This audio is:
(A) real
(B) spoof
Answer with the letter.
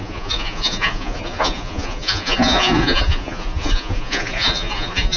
B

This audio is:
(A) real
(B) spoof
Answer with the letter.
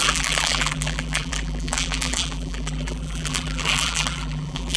B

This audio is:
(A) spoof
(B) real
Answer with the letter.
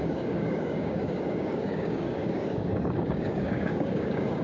A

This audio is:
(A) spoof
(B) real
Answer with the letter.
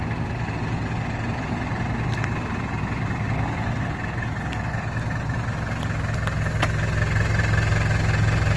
B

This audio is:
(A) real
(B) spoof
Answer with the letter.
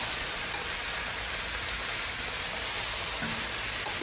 A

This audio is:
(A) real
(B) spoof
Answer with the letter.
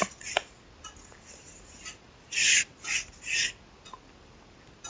A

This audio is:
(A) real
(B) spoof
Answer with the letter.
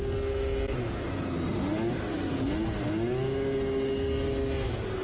A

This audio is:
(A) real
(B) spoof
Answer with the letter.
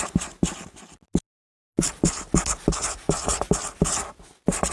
A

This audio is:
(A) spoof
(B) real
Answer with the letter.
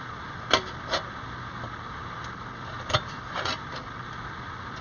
B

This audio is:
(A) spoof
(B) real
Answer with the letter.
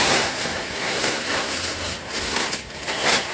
A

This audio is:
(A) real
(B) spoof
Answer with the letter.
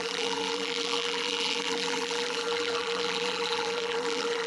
B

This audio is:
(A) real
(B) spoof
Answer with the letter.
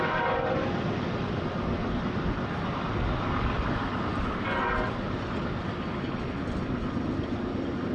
A